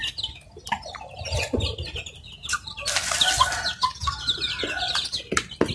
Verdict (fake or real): real